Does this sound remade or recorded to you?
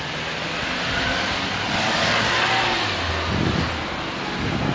recorded